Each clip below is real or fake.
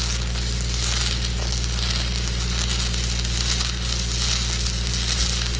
real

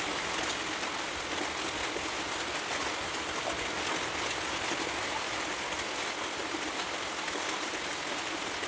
real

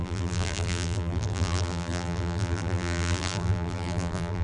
fake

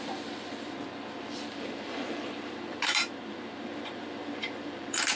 fake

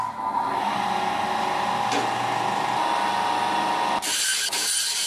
real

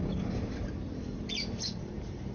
fake